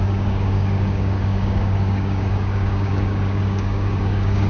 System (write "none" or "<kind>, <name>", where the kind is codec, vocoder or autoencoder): codec, DAC